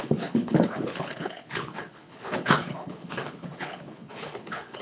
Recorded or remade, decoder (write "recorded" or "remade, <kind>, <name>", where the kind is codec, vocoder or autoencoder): remade, codec, HILCodec